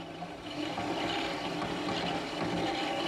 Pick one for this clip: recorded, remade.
recorded